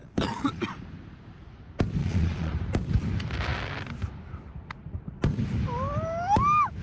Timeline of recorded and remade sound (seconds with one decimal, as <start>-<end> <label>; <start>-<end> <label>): 0.0-0.7 remade; 0.7-2.0 recorded; 2.0-2.5 remade; 2.5-6.8 recorded